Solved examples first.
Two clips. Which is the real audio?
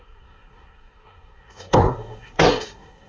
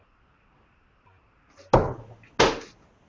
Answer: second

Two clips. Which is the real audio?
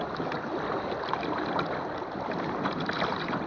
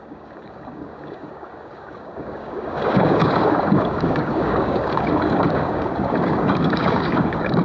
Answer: first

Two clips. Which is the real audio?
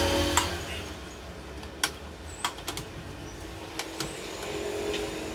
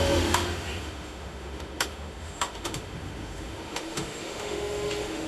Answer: first